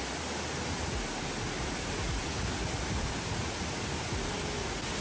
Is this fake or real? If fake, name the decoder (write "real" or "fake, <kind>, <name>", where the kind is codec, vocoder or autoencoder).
real